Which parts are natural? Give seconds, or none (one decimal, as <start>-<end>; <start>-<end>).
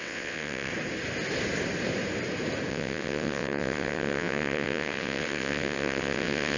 0.7-2.7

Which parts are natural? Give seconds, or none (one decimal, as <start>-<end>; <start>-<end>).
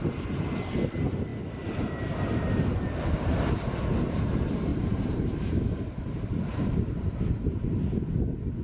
0.0-4.7; 5.8-6.5; 7.6-8.6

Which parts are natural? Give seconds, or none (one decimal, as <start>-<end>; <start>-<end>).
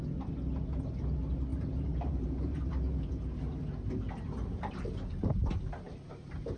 0.0-1.5; 3.1-4.4; 5.6-6.6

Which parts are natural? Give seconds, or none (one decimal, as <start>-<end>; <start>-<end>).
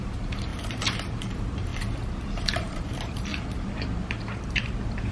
1.7-2.5; 3.3-4.6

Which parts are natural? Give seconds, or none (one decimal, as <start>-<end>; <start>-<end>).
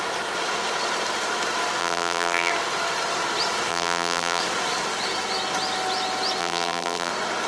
0.0-1.8; 2.5-3.7; 4.4-6.4; 7.1-7.5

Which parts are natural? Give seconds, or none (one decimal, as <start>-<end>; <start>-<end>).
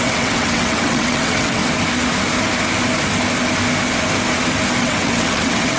1.6-4.8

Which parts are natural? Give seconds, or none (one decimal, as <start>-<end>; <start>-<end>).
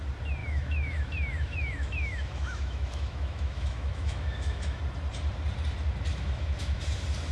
0.0-0.4; 4.8-6.1; 6.8-7.3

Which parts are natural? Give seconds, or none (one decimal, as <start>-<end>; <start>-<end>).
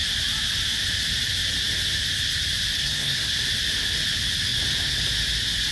0.0-2.8; 3.3-5.7